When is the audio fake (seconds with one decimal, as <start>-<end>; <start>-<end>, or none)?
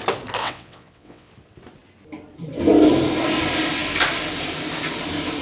0.4-1.3